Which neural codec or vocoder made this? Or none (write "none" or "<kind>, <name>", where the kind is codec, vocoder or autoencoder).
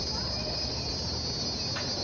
none